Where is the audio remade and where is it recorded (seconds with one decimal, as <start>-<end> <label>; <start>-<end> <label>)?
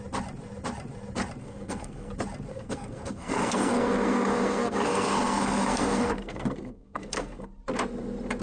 0.0-1.4 recorded; 1.4-2.1 remade; 2.1-2.5 recorded; 2.5-7.5 remade; 7.5-8.4 recorded